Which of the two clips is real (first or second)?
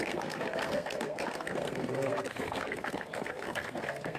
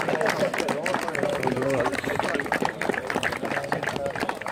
second